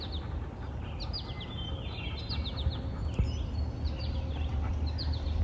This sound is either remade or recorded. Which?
recorded